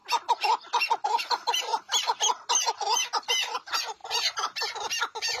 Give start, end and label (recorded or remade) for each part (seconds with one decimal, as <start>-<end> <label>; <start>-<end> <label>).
0.0-5.4 recorded